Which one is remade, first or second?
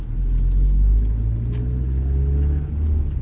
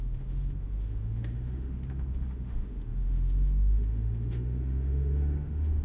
second